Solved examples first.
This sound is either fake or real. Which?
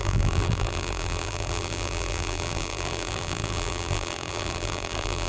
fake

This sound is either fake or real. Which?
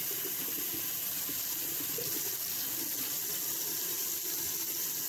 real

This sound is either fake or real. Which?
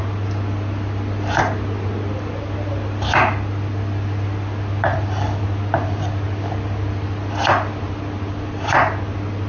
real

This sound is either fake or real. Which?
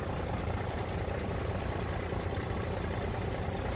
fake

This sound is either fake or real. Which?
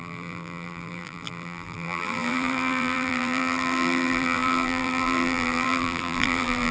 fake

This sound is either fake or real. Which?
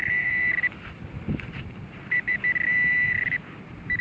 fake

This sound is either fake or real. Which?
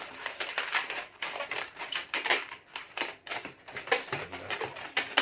fake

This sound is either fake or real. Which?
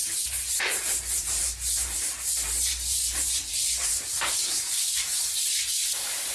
fake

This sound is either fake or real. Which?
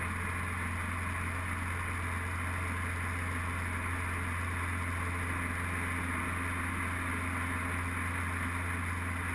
real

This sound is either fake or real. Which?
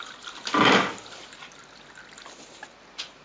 real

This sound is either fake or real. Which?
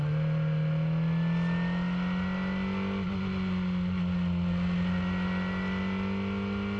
real